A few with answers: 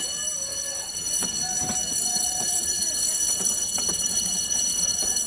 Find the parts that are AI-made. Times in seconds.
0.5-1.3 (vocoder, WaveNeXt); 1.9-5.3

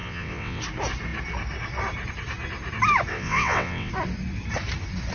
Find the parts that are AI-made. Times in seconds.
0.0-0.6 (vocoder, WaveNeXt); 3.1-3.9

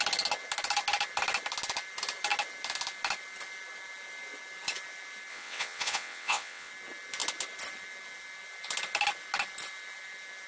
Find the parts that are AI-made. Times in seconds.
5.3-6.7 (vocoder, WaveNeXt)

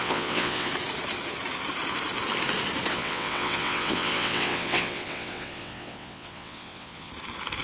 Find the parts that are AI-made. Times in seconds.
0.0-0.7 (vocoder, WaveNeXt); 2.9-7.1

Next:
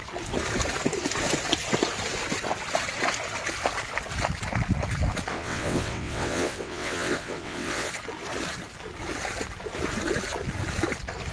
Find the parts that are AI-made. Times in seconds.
5.3-7.9 (vocoder, WaveNeXt)

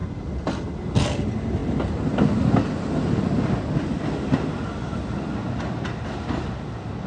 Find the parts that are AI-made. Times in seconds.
none

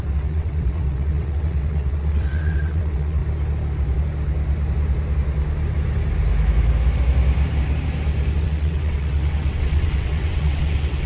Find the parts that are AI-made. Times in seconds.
0.0-3.2 (vocoder, WaveNeXt); 8.4-11.1